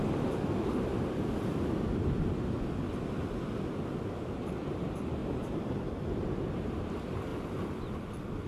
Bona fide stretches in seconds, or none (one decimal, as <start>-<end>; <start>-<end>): 0.0-5.2; 5.8-8.5